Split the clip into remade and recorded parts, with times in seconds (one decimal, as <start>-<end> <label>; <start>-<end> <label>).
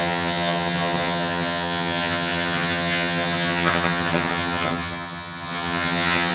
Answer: 0.0-6.3 remade